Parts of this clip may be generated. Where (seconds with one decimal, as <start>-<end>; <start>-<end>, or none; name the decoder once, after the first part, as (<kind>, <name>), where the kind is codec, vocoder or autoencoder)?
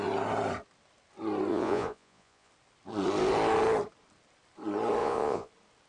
1.5-2.5 (vocoder, Vocos); 5.0-5.5